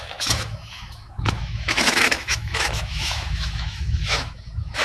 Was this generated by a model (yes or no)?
yes